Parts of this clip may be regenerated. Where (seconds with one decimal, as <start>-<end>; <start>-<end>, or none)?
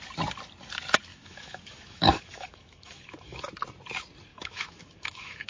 1.1-3.5; 4.3-5.5